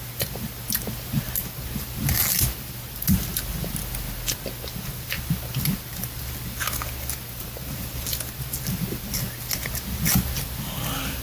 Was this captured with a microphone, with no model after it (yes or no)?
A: yes